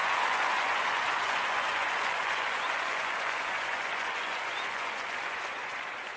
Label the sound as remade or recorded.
remade